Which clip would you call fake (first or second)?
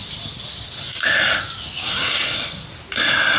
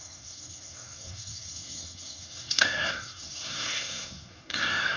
second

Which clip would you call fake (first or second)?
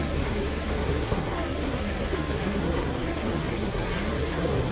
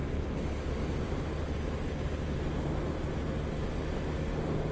first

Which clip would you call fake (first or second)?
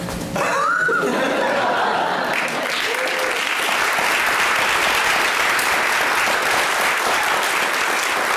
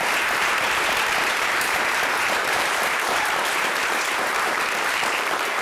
second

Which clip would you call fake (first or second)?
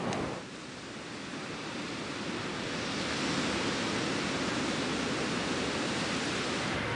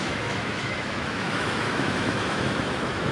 second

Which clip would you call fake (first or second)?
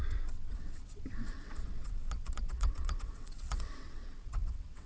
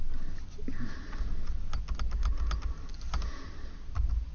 first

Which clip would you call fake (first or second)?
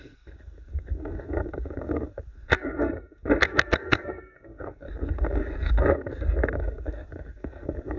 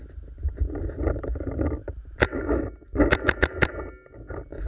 first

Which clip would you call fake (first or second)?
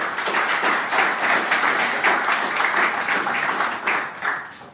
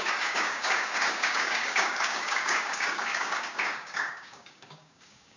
second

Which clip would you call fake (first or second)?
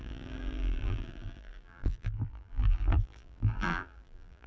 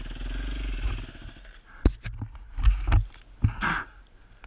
first